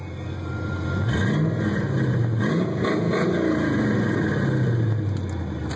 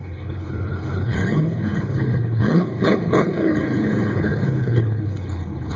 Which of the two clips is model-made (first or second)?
second